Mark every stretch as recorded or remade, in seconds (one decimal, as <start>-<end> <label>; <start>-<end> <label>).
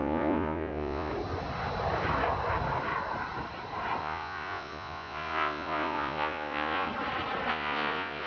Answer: 0.0-1.1 remade; 1.1-4.0 recorded; 4.0-6.9 remade; 6.9-7.5 recorded; 7.5-8.3 remade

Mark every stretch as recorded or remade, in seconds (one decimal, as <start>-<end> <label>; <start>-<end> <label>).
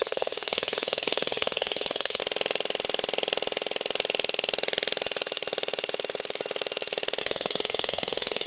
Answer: 0.0-2.2 remade; 2.2-7.2 recorded; 7.2-8.5 remade